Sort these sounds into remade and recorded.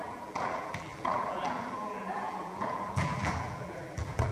remade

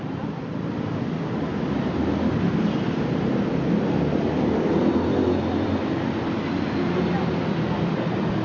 recorded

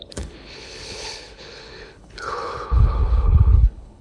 remade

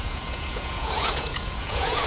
remade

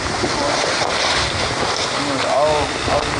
recorded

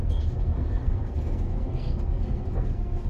remade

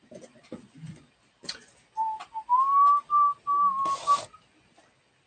recorded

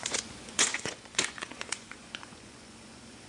remade